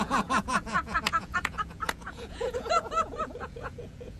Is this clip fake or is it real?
fake